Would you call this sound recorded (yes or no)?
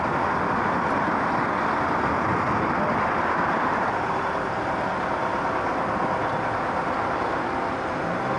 yes